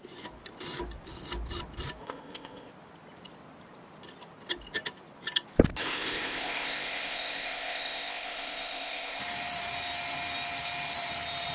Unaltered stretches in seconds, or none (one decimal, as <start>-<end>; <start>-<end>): 0.0-2.0; 2.7-5.8; 9.2-11.5